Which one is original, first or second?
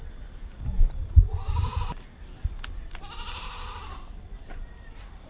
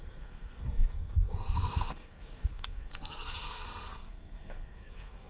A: first